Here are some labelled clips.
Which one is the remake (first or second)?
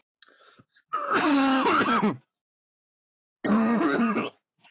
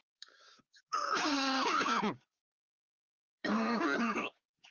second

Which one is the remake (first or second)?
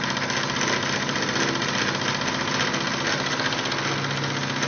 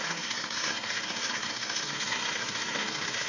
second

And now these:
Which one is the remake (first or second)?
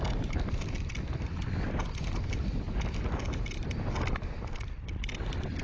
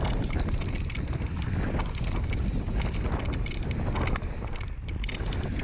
first